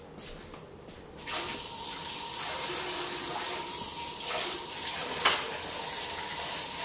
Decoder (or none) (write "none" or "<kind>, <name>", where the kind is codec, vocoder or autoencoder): none